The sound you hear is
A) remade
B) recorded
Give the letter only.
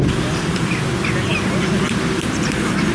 B